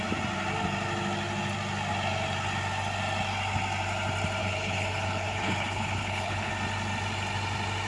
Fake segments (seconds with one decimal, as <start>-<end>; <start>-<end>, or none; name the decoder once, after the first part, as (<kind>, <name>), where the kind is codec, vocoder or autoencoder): 4.4-6.5 (codec, HILCodec)